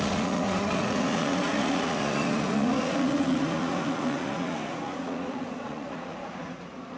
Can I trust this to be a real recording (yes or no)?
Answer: no